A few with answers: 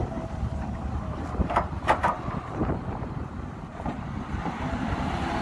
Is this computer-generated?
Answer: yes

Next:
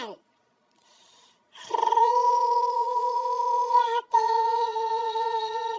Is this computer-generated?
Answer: yes